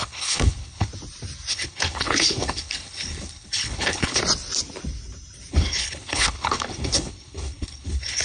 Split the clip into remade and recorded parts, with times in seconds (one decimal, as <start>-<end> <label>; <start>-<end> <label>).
0.0-0.9 remade; 0.9-1.5 recorded; 1.5-4.2 remade; 4.2-5.5 recorded; 5.5-8.2 remade